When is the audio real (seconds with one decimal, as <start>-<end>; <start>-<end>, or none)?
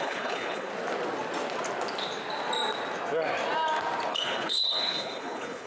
0.7-4.1